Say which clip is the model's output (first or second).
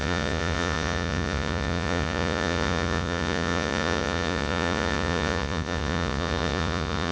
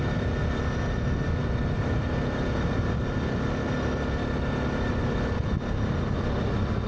first